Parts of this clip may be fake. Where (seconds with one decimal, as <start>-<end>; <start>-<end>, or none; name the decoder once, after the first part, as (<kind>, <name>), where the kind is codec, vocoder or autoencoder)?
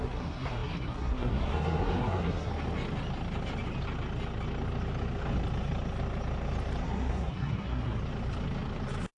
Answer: 0.0-2.5 (codec, SNAC); 6.8-8.0